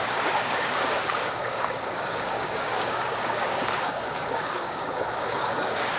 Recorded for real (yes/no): no